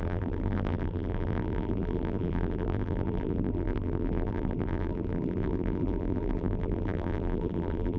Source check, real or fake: fake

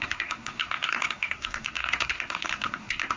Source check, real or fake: fake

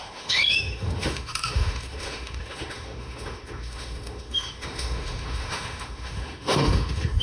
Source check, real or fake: fake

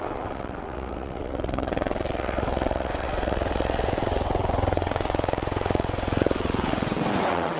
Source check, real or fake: fake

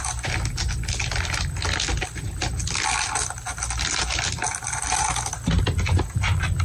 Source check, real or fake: real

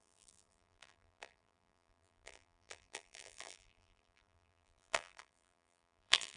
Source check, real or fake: fake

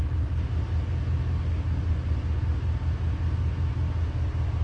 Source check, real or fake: real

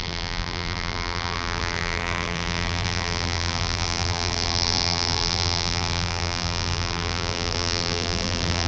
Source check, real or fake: fake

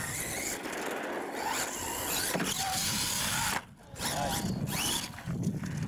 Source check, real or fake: real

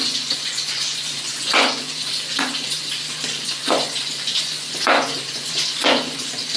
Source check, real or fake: fake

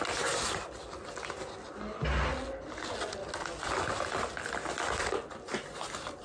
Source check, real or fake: real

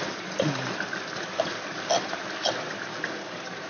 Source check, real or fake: real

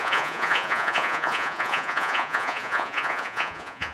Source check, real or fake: fake